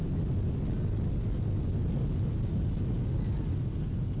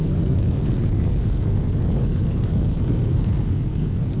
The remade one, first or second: second